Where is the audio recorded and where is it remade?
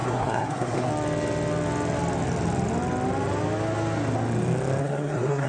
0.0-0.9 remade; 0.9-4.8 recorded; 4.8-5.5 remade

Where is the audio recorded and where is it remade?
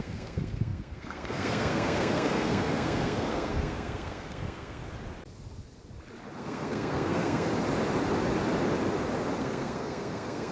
0.0-4.8 remade; 4.8-6.4 recorded; 6.4-7.5 remade; 7.5-9.4 recorded; 9.4-10.5 remade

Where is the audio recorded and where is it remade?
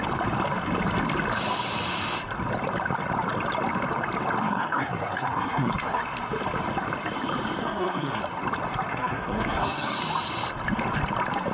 0.0-4.4 recorded; 4.4-6.0 remade; 6.0-7.6 recorded; 7.6-8.2 remade; 8.2-8.9 recorded; 8.9-10.0 remade; 10.0-11.5 recorded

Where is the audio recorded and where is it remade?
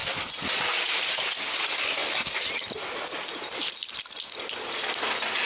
0.0-5.4 recorded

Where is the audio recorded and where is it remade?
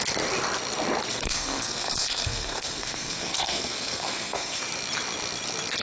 0.0-1.1 recorded; 1.1-4.6 remade; 4.6-5.8 recorded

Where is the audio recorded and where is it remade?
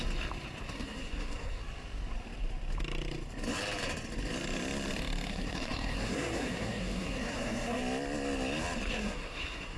0.0-0.7 recorded; 0.7-1.6 remade; 1.6-5.3 recorded; 5.3-7.8 remade; 7.8-8.9 recorded; 8.9-9.8 remade